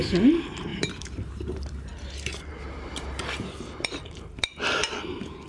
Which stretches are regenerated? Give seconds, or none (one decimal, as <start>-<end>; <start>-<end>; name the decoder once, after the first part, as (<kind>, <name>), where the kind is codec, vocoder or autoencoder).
0.0-5.5 (vocoder, BigVGAN v2)